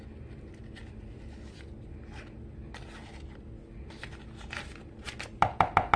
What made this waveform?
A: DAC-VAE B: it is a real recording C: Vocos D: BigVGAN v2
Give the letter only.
B